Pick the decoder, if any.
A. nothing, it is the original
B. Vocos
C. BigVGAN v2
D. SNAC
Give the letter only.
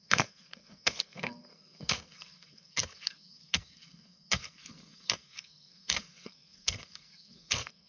D